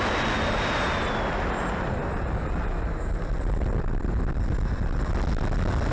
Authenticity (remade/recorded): recorded